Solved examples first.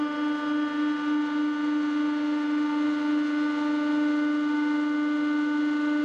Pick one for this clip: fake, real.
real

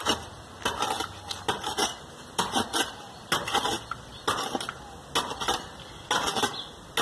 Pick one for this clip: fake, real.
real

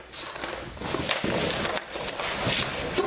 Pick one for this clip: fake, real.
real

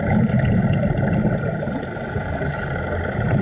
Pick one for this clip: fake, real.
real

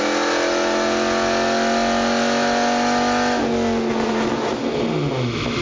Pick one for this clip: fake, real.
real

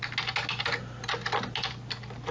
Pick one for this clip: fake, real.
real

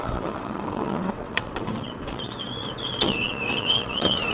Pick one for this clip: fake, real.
fake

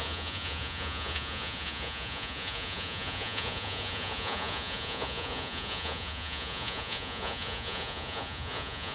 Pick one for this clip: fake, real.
fake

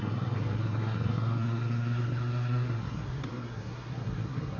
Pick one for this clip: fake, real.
fake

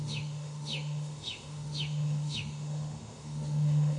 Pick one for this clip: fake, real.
fake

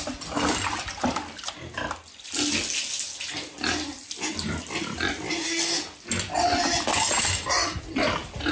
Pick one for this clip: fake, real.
real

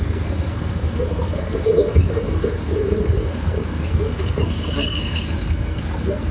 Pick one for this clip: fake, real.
fake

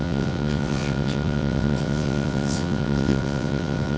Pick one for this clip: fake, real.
fake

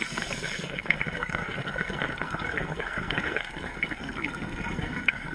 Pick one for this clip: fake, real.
fake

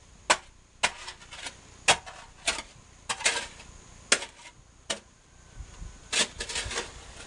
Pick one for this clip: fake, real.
real